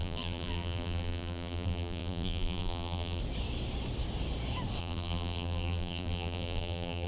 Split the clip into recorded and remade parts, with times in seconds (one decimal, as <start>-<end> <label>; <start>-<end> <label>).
0.0-3.2 remade; 3.2-4.8 recorded; 4.8-7.1 remade